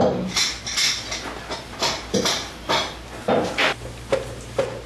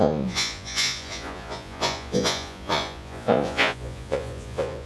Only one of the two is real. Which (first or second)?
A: first